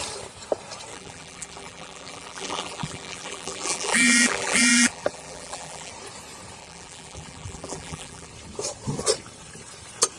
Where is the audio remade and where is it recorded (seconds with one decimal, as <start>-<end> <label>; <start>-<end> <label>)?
0.0-0.9 recorded; 0.9-5.9 remade; 5.9-6.6 recorded; 6.6-8.3 remade; 8.3-10.2 recorded